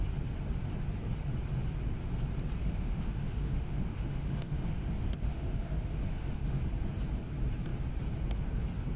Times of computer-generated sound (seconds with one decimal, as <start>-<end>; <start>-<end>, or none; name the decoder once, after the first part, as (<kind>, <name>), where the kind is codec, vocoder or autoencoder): 2.6-6.6 (autoencoder, DAC-VAE)